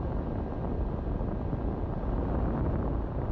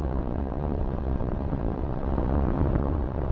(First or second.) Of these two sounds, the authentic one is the first